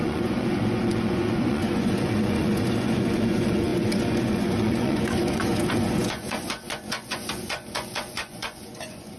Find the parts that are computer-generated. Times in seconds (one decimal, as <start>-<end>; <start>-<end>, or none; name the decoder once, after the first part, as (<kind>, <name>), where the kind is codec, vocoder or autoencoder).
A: 0.0-9.2 (vocoder, Vocos)